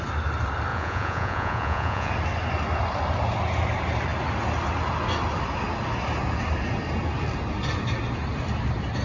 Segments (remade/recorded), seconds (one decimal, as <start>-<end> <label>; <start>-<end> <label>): 0.0-0.7 recorded; 0.7-2.1 remade; 2.1-9.0 recorded